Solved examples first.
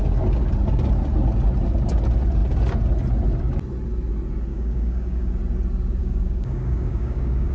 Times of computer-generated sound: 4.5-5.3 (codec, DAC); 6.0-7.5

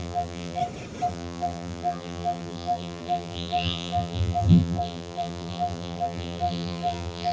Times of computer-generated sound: 0.0-0.6 (vocoder, BigVGAN v2); 1.1-7.3

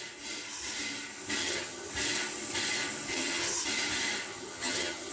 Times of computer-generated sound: 1.4-1.9 (vocoder, HiFi-GAN); 3.1-3.6; 4.3-5.1

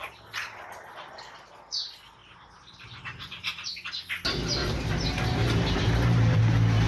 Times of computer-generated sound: 2.2-3.7 (vocoder, BigVGAN v2); 4.6-6.4